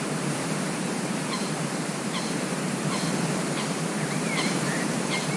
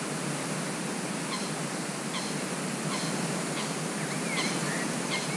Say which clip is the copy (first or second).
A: first